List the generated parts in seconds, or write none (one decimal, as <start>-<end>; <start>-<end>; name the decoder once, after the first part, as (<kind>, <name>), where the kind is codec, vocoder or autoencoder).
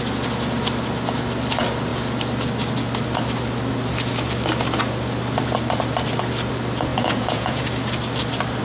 6.9-7.6 (vocoder, Vocos)